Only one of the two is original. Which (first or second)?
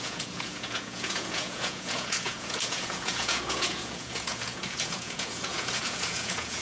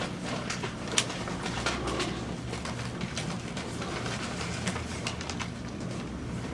second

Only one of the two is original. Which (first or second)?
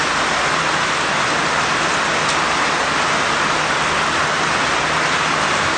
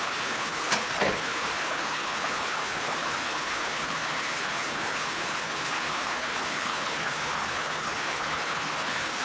first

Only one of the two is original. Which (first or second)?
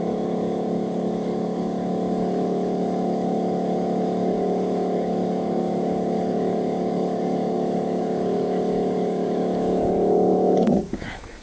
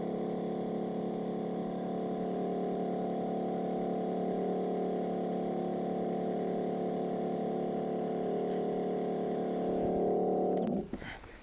second